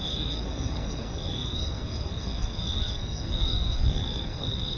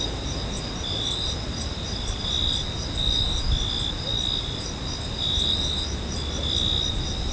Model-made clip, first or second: first